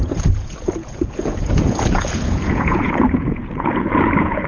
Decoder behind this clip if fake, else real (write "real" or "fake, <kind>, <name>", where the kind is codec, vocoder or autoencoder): fake, vocoder, Vocos